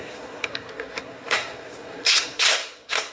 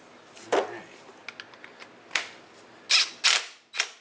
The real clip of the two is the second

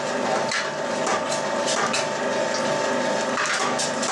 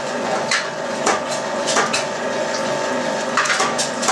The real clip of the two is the first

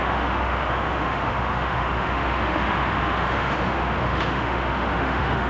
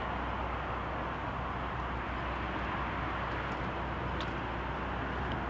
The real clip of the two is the second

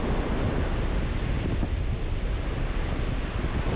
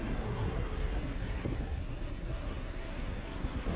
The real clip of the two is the first